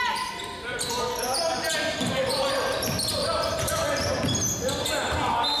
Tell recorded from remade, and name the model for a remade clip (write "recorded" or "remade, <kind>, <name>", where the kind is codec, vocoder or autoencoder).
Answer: recorded